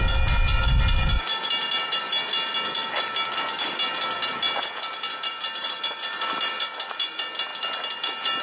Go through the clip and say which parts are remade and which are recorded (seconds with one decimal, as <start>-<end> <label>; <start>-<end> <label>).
0.0-8.4 recorded